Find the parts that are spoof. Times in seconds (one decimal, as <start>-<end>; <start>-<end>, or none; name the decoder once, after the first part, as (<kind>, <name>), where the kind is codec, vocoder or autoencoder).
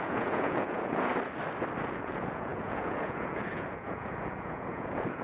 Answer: 0.0-1.1 (vocoder, Vocos); 1.8-5.2